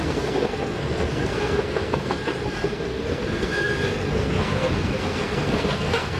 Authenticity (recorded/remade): remade